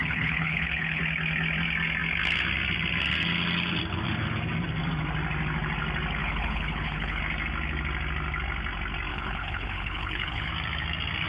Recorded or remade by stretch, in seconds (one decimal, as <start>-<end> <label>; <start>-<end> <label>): 0.0-1.0 remade; 1.0-6.2 recorded; 6.2-7.2 remade; 7.2-9.1 recorded; 9.1-10.5 remade; 10.5-11.3 recorded